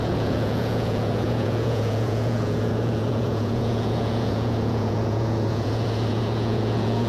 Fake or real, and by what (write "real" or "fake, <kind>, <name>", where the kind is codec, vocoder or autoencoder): fake, vocoder, Vocos